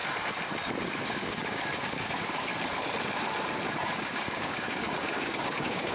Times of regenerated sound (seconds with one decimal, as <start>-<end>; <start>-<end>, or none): 0.9-2.5; 4.0-5.9

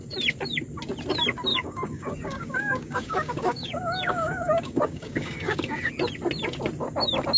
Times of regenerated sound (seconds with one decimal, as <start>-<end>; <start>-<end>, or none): 1.5-5.9

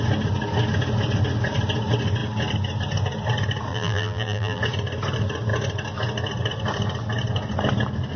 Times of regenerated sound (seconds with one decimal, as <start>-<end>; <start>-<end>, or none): 3.7-4.6

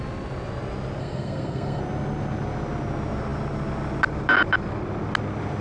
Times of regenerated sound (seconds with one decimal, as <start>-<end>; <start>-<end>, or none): 1.0-1.8

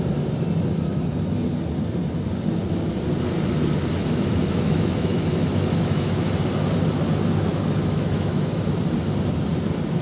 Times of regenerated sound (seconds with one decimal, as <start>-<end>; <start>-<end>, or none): 4.0-6.3; 7.5-8.8